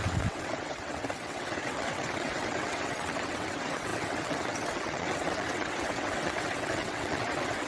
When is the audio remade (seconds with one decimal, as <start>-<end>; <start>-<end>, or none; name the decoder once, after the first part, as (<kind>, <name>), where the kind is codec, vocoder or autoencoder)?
0.0-7.7 (vocoder, WaveNeXt)